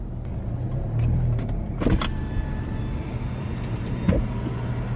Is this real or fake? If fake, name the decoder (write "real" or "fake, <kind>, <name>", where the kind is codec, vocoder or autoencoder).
real